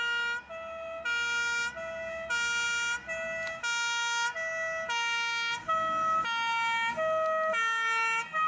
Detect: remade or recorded recorded